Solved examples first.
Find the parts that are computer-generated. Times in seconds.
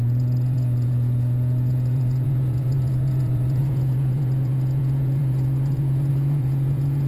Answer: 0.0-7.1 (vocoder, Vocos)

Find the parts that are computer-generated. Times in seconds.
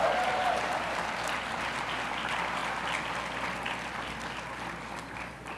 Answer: 0.4-1.0 (vocoder, BigVGAN v2)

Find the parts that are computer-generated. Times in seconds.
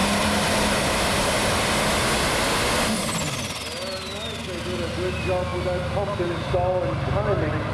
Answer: none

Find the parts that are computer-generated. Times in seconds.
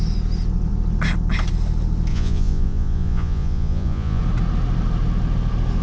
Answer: 2.1-4.2 (vocoder, Vocos)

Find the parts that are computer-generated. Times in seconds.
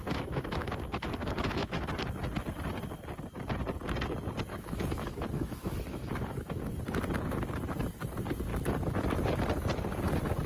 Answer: 0.0-0.7 (autoencoder, DAC-VAE); 1.2-1.9; 4.5-6.6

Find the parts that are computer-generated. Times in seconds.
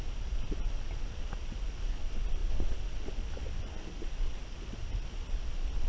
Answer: none